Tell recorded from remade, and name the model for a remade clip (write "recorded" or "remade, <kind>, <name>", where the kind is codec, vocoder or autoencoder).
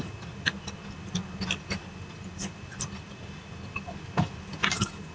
recorded